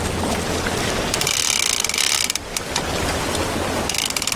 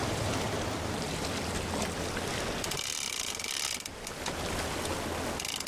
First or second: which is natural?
second